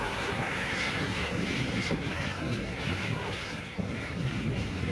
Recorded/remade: remade